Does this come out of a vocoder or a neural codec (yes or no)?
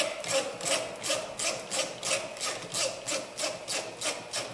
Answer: no